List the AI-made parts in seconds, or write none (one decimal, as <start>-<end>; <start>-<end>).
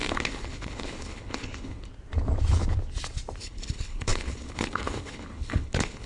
0.0-1.9; 3.4-6.1